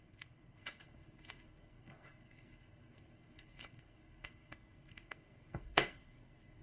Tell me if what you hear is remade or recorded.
remade